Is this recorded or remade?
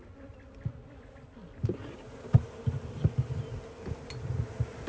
recorded